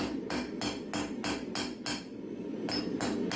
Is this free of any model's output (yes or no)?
yes